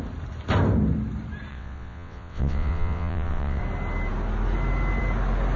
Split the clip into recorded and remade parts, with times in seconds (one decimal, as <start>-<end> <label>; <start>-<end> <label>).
0.0-1.5 recorded; 1.5-3.6 remade; 3.6-5.6 recorded